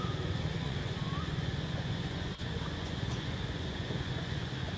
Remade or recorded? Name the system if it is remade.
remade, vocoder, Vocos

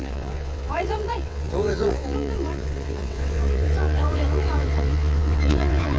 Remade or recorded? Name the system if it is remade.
remade, vocoder, WaveNeXt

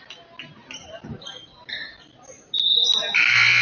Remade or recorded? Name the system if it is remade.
recorded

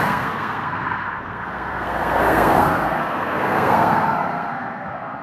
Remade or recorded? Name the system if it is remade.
remade, codec, SNAC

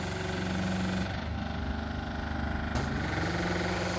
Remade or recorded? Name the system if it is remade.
recorded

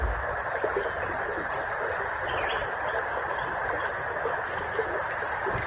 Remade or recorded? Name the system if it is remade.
recorded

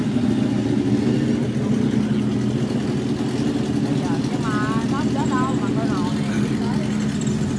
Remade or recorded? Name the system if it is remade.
recorded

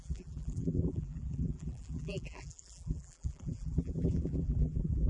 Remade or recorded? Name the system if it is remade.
remade, vocoder, BigVGAN v2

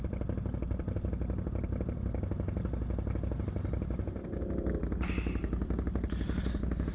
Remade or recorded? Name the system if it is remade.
recorded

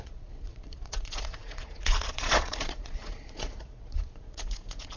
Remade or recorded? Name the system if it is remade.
remade, vocoder, Vocos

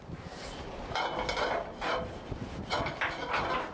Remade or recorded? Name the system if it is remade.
recorded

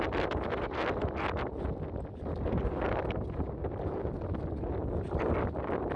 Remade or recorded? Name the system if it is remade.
recorded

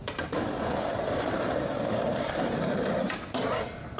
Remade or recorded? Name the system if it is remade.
remade, vocoder, BigVGAN v2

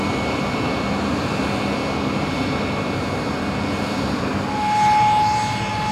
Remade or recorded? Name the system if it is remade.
recorded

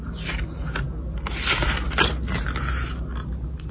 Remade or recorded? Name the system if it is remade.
recorded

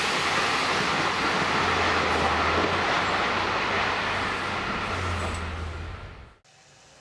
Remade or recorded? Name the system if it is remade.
recorded